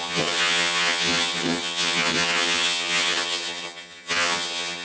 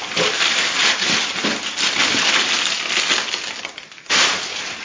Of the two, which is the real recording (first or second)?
second